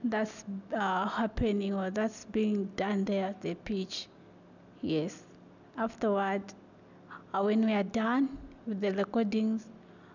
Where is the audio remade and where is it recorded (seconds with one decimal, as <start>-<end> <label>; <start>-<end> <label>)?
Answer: 0.0-10.1 recorded